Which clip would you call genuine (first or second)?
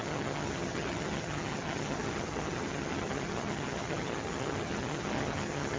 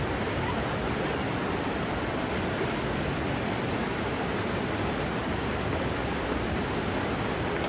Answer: second